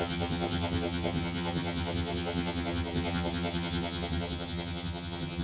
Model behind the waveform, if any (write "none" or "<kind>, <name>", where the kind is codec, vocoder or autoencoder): vocoder, HiFi-GAN